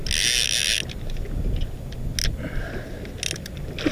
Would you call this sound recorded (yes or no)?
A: yes